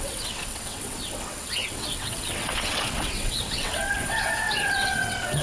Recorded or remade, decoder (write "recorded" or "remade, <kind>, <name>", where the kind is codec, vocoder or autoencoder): remade, vocoder, WaveNeXt